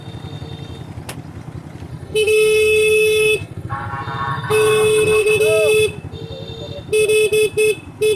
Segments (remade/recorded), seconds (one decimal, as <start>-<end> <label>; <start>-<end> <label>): 0.0-1.9 recorded; 1.9-3.9 remade; 3.9-4.3 recorded; 4.3-5.3 remade; 5.3-8.2 recorded